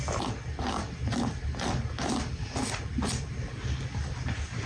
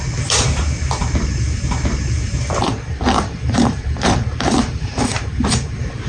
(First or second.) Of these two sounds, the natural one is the first